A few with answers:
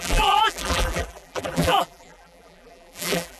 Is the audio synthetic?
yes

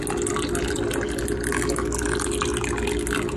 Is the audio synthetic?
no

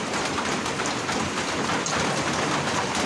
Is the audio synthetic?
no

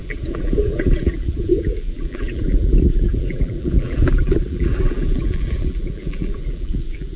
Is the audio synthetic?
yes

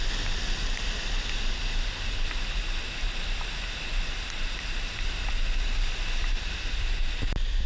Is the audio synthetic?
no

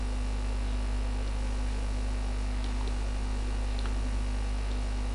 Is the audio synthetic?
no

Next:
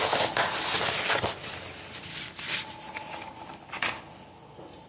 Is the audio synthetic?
no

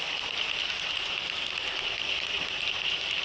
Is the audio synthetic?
yes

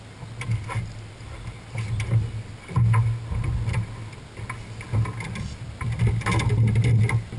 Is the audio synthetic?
no